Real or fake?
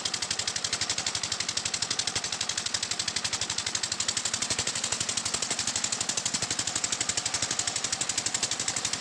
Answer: real